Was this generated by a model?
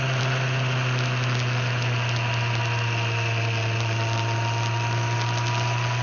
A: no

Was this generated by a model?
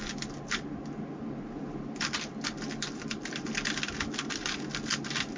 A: no